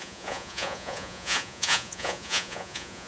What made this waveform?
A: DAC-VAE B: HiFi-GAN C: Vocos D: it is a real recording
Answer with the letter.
C